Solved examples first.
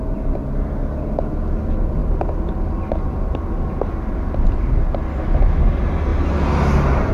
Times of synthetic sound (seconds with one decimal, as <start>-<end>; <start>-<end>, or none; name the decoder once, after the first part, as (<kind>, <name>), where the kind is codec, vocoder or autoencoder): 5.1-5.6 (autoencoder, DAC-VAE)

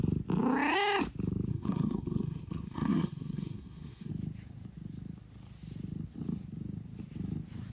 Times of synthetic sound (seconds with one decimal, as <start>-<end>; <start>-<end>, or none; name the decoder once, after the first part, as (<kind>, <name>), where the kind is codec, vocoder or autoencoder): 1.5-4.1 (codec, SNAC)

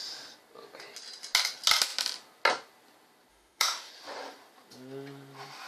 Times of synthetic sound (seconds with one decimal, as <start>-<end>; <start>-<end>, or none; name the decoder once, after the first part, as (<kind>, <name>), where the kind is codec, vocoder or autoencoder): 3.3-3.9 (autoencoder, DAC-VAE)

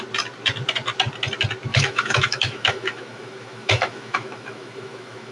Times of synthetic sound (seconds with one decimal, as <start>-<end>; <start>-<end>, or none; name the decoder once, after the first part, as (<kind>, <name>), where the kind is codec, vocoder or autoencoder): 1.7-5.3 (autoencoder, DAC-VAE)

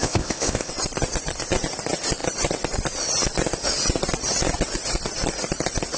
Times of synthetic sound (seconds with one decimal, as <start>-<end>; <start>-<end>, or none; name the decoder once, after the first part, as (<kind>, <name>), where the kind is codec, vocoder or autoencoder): 0.0-0.7 (codec, ZipCodec)

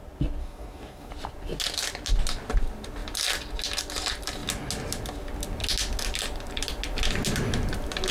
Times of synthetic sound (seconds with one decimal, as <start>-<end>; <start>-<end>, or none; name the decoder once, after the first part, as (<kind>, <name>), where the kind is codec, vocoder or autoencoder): 0.4-1.1 (codec, DAC)

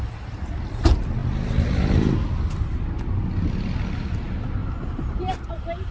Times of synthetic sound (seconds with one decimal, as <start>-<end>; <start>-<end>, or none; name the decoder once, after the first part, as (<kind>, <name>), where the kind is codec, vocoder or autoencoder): 0.0-1.2 (vocoder, BigVGAN v2); 3.9-5.9